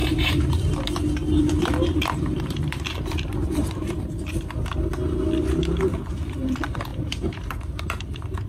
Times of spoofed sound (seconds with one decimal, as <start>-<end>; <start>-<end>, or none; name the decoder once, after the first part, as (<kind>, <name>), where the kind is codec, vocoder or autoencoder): 0.0-0.7 (vocoder, BigVGAN v2); 1.2-4.6; 6.9-7.8